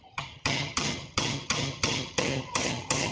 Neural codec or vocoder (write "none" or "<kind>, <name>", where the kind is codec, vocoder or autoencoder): vocoder, HiFi-GAN